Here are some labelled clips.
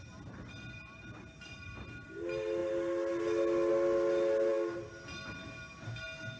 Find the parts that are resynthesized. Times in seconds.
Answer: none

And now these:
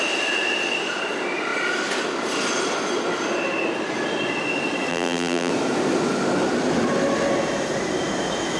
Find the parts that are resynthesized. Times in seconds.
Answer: 4.9-5.5 (vocoder, BigVGAN v2)

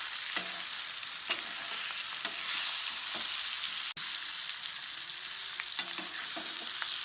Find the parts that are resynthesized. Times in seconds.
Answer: none